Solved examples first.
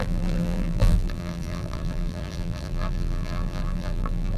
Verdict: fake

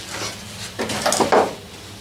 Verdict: real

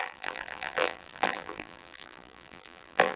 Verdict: fake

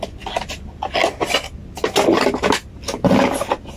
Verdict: real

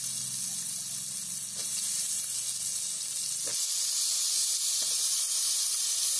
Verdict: real